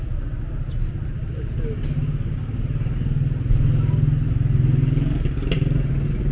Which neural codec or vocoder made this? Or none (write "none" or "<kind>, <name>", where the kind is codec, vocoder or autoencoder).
none